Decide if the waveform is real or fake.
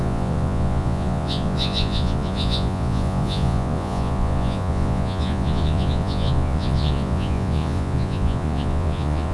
fake